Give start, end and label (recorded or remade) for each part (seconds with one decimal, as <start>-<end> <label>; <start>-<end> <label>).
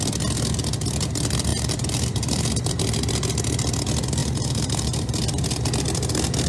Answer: 0.0-1.5 recorded; 1.5-2.5 remade; 2.5-4.2 recorded; 4.2-5.2 remade; 5.2-6.5 recorded